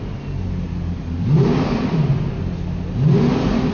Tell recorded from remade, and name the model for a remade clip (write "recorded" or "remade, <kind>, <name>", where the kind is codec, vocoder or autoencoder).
recorded